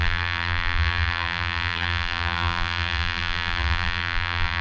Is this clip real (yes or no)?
no